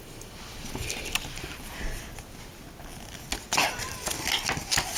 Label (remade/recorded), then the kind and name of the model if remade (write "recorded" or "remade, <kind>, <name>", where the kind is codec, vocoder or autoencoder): recorded